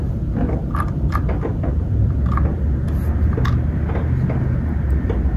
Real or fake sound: real